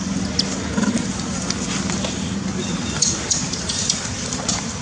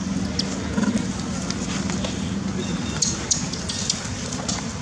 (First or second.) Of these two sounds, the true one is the second